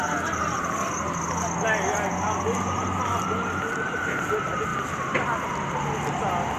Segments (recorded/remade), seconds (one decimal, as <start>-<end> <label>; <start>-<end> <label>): 0.0-0.4 remade; 0.4-3.7 recorded; 3.7-4.7 remade; 4.7-6.6 recorded